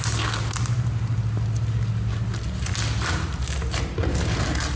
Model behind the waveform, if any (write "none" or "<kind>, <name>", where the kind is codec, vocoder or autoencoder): none